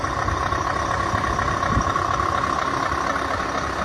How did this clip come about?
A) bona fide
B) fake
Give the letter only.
A